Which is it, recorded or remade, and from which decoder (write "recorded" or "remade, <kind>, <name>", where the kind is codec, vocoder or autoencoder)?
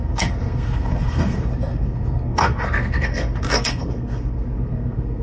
remade, codec, SNAC